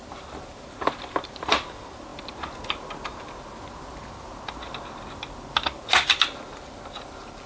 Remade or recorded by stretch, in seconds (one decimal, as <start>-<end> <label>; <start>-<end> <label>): 0.0-7.5 recorded